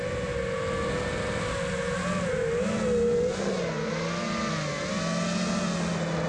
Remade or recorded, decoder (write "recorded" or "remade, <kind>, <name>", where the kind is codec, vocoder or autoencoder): recorded